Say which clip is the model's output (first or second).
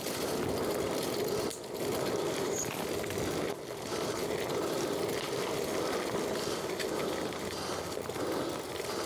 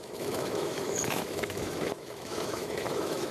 second